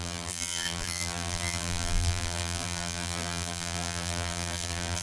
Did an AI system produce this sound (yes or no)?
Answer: yes